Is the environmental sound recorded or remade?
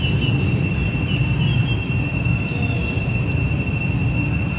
recorded